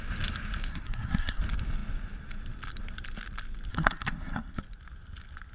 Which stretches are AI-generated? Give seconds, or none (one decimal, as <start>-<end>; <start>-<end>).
0.7-1.4; 3.7-4.6